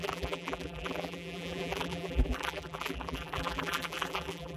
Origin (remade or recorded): remade